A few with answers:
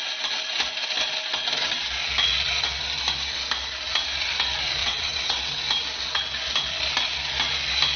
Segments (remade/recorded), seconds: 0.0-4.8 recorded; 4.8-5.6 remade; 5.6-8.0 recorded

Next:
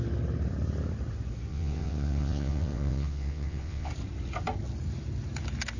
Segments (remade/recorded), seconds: 0.0-1.5 recorded; 1.5-3.9 remade; 3.9-5.8 recorded

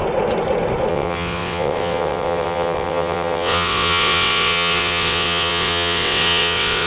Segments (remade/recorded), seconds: 0.0-0.9 recorded; 0.9-6.9 remade

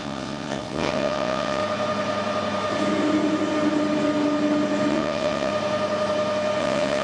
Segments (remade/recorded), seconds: 0.0-1.6 remade; 1.6-4.9 recorded; 4.9-5.5 remade; 5.5-6.6 recorded; 6.6-7.0 remade

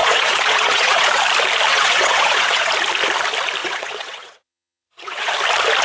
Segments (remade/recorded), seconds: 0.0-1.2 remade; 1.2-1.7 recorded; 1.7-2.7 remade; 2.7-3.6 recorded; 3.6-5.3 remade; 5.3-5.8 recorded

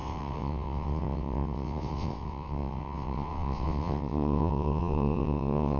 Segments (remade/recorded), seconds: 0.0-5.8 remade

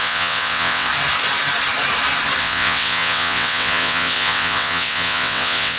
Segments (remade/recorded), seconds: 0.0-0.9 remade; 0.9-2.4 recorded; 2.4-5.8 remade